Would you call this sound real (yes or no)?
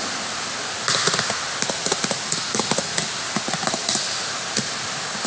yes